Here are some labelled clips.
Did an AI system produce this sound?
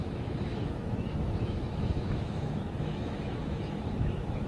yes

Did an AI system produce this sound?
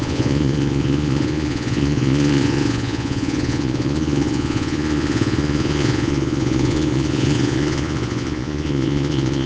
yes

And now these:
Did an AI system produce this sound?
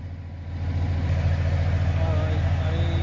no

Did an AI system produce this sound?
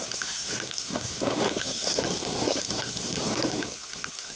yes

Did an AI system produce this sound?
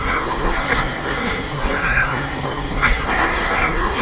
yes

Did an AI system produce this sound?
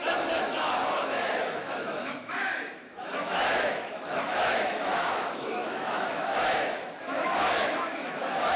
yes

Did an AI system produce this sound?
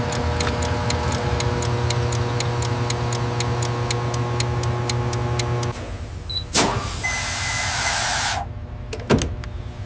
no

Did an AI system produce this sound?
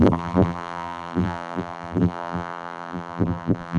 yes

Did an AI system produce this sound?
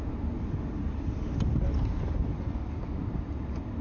no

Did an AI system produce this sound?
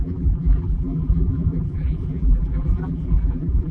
yes